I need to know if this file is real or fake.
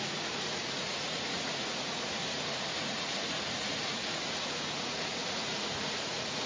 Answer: fake